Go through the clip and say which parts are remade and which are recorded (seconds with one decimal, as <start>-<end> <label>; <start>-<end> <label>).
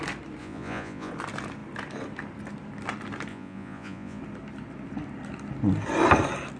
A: 0.0-0.4 recorded; 0.4-1.1 remade; 1.1-3.3 recorded; 3.3-4.2 remade; 4.2-6.6 recorded